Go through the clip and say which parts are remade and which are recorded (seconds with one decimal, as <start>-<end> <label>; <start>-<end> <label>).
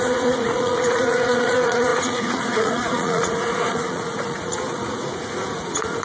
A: 0.0-6.0 remade